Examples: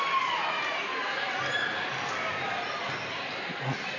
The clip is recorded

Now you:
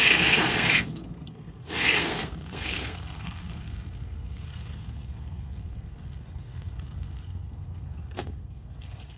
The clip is remade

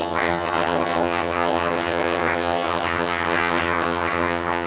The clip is remade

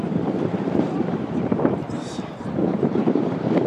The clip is remade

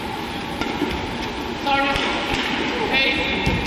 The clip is recorded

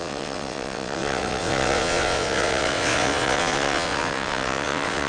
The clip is remade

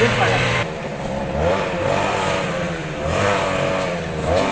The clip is remade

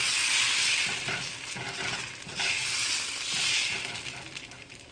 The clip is recorded